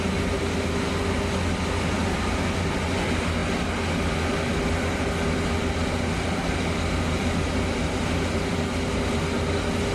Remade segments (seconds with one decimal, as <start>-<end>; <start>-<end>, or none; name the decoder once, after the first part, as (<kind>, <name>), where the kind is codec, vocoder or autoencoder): none